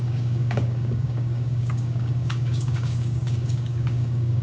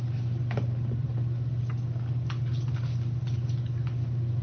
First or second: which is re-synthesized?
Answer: first